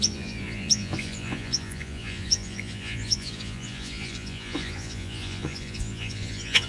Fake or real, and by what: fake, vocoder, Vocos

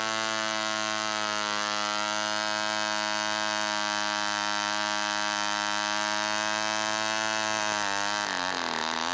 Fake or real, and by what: real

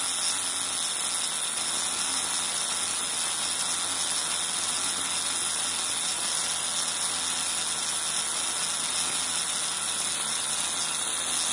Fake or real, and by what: real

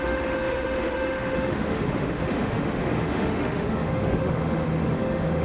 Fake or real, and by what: fake, autoencoder, DAC-VAE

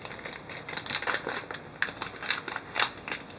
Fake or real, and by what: real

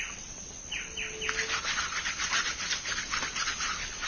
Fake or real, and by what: real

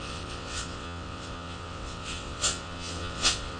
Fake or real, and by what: fake, vocoder, WaveNeXt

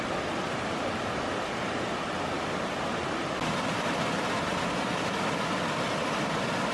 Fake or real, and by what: real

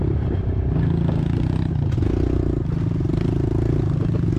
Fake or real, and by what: real